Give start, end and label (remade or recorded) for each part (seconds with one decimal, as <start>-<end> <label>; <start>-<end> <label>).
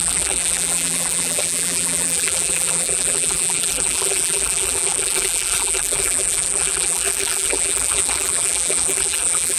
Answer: 0.0-9.6 remade